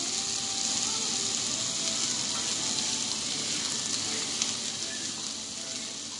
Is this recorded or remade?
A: recorded